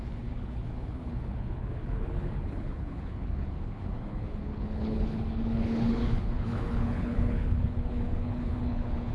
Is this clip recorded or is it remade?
remade